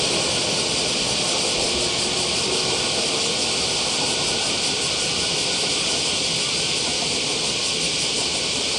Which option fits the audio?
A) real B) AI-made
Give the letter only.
A